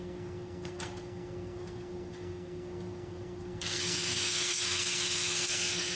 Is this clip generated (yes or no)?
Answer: yes